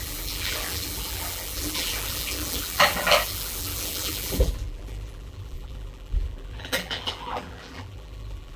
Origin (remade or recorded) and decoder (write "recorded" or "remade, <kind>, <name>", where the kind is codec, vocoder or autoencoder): remade, vocoder, BigVGAN v2